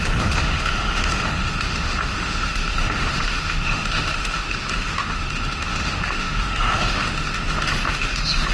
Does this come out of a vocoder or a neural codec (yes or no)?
yes